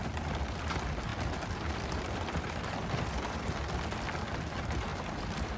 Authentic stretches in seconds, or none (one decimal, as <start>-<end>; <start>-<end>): 0.0-1.1; 3.8-4.9